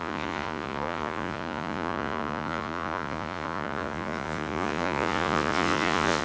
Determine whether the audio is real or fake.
fake